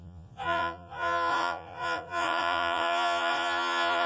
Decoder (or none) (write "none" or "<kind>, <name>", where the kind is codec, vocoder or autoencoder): vocoder, Vocos